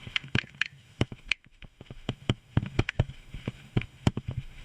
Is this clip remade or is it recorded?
remade